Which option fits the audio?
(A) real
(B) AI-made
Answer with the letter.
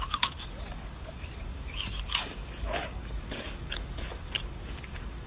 B